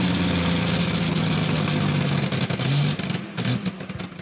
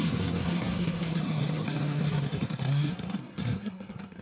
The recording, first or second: first